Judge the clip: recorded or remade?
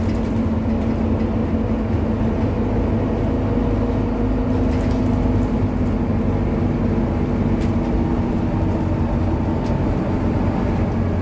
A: recorded